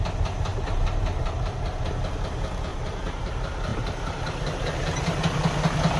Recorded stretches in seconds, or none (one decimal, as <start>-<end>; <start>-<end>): 0.0-0.5; 1.9-2.7; 3.3-3.7; 5.2-6.0